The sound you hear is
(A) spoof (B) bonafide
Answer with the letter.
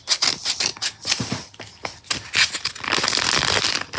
B